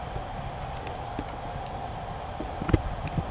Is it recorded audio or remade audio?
recorded